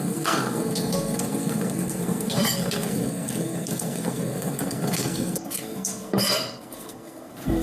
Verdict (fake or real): fake